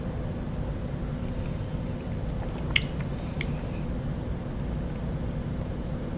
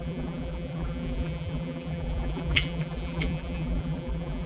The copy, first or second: second